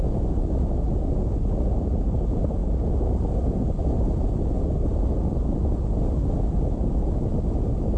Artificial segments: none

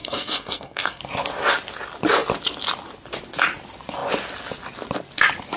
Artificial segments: 0.0-1.0 (codec, SNAC)

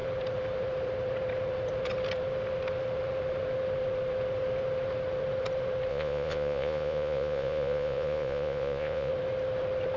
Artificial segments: 5.9-9.1 (vocoder, Vocos)

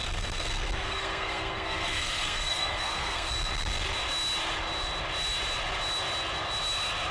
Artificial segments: 0.0-3.3 (codec, SNAC)